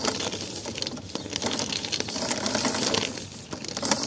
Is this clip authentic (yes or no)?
yes